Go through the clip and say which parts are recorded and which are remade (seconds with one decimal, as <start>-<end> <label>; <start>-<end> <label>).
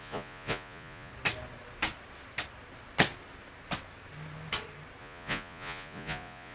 0.0-1.1 remade; 1.1-5.0 recorded; 5.0-6.5 remade